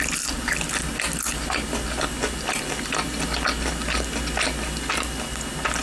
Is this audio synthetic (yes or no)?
no